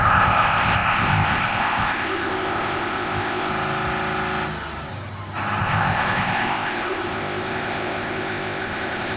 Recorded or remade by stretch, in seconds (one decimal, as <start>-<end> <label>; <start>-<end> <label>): 0.0-3.5 remade; 3.5-5.6 recorded; 5.6-9.2 remade